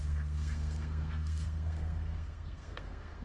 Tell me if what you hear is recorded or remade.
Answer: remade